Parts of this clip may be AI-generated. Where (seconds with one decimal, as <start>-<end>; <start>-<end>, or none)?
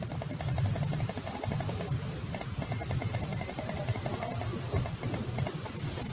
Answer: 0.0-6.1